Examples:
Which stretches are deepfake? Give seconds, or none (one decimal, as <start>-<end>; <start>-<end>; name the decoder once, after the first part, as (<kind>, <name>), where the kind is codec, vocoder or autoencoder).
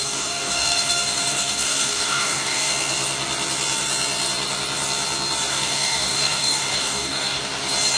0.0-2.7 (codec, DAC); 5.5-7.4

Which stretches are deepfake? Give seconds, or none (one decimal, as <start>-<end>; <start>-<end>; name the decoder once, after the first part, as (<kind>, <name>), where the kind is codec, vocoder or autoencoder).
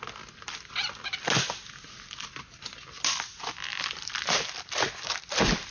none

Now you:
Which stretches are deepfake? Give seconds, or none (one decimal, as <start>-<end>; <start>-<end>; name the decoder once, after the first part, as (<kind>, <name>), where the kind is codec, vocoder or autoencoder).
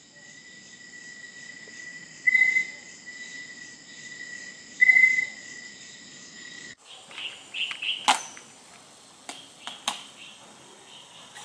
6.1-6.9 (codec, DAC)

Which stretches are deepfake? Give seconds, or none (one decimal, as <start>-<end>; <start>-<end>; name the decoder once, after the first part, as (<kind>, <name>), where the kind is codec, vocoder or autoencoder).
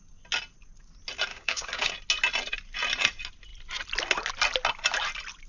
1.3-1.9 (codec, DAC)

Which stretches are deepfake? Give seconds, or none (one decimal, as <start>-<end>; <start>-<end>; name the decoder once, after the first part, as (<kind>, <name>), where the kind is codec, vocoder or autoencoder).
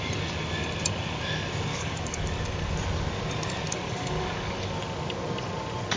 1.7-2.7 (codec, DAC); 3.7-4.8